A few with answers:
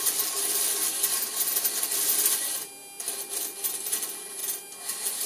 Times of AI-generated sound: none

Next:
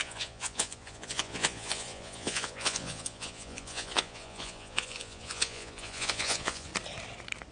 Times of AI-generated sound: 0.0-6.7 (vocoder, Vocos)

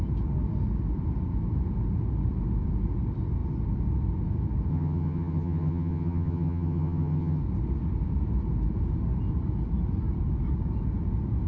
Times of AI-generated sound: 4.7-7.4 (vocoder, HiFi-GAN)

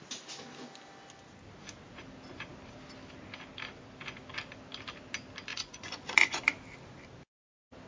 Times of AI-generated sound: 5.5-6.4 (vocoder, Vocos)

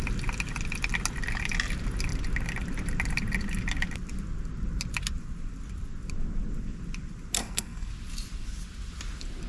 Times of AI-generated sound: 7.4-7.9 (codec, SNAC)

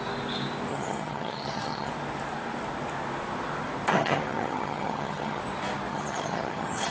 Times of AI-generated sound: 0.7-1.9 (vocoder, HiFi-GAN); 3.9-5.4; 5.9-6.9